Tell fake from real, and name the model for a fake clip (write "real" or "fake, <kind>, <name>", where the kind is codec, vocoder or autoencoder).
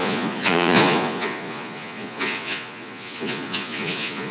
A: fake, vocoder, Vocos